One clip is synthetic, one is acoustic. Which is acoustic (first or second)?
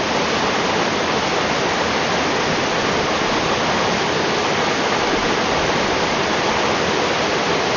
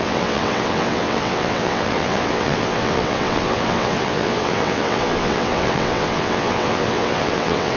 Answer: first